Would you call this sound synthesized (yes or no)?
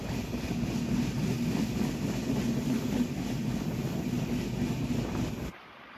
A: no